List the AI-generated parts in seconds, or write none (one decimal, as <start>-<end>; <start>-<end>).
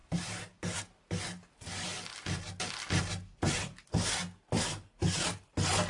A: 0.0-0.8